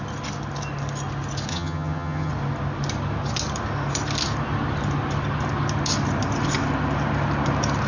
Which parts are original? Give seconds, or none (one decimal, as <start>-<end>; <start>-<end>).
0.0-1.5; 2.3-7.9